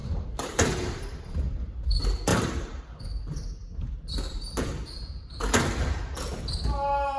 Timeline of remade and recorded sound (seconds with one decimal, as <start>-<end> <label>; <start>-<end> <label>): 0.0-1.8 remade; 1.8-2.3 recorded; 2.3-2.8 remade; 2.8-3.6 recorded; 3.6-5.4 remade; 5.4-7.2 recorded